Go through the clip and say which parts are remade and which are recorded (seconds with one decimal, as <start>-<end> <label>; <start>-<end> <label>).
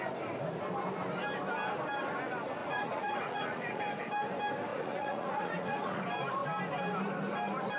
0.0-2.6 recorded; 2.6-3.8 remade; 3.8-4.7 recorded; 4.7-6.0 remade; 6.0-7.8 recorded